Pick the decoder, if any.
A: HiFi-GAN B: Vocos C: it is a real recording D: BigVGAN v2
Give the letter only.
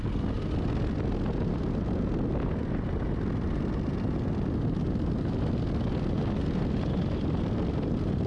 C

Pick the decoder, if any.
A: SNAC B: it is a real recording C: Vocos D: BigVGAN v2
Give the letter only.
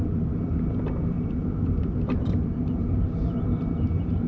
D